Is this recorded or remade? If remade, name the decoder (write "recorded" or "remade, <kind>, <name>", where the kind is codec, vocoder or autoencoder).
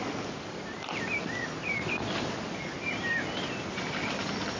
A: recorded